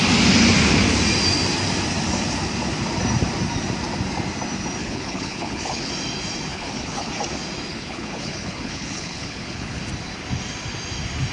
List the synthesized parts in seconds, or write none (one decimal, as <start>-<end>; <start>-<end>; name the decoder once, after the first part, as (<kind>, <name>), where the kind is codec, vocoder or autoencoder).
4.8-5.9 (codec, HILCodec); 6.5-7.1; 7.7-9.8